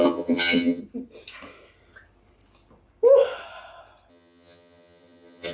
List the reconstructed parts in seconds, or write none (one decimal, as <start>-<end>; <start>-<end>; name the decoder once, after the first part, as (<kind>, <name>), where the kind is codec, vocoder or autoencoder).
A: 0.0-0.8 (vocoder, HiFi-GAN); 4.1-5.5